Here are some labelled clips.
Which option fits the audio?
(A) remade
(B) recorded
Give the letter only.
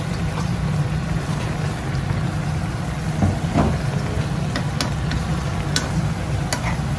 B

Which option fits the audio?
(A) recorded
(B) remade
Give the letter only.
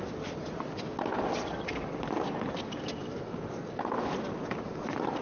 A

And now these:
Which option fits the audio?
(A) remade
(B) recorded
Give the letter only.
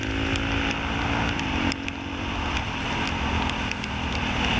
B